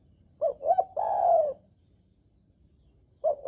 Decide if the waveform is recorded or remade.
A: remade